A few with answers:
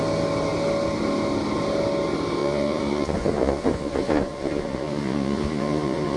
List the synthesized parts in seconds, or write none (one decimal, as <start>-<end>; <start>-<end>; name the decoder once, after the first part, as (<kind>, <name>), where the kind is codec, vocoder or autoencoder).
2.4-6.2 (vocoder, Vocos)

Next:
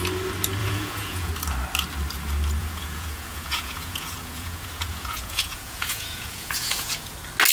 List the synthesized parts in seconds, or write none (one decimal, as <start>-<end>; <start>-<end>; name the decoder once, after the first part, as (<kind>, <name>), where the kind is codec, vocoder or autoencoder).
0.6-1.3 (vocoder, Vocos); 2.6-7.1

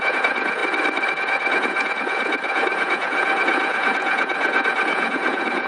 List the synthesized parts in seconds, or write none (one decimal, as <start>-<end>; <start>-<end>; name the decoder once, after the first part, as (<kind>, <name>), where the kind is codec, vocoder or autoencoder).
0.0-0.6 (vocoder, Vocos); 1.1-5.7

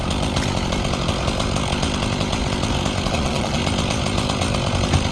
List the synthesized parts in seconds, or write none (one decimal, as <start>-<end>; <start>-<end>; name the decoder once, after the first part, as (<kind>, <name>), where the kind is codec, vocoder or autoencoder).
3.1-3.6 (vocoder, Vocos)

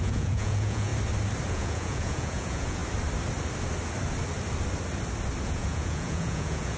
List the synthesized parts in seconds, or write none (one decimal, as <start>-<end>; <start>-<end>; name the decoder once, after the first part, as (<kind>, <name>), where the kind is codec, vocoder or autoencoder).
0.0-0.9 (vocoder, Vocos); 1.5-2.8; 5.4-6.8